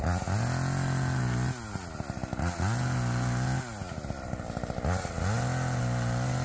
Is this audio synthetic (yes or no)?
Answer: no